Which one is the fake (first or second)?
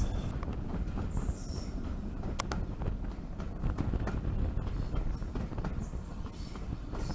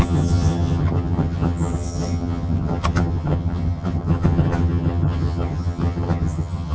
second